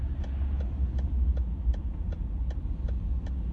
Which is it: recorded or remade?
recorded